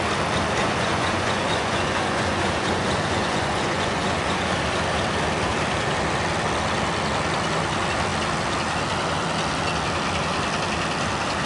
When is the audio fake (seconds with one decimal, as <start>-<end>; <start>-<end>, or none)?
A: 0.6-4.5